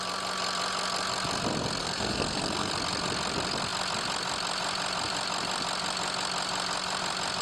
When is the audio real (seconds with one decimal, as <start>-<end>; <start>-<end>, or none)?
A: 0.0-1.8; 2.7-7.4